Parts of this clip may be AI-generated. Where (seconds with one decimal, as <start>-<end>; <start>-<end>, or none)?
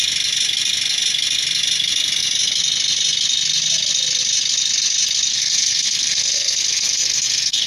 5.3-7.7